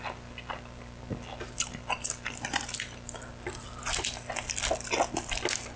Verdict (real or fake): real